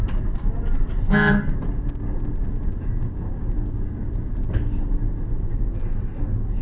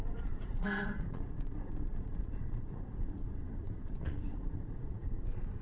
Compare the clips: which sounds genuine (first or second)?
first